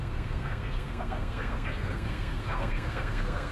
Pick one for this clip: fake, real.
fake